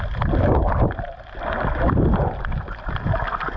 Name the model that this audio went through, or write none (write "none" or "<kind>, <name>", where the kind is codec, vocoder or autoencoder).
none